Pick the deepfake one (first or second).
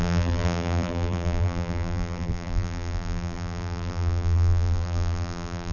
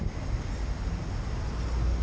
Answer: first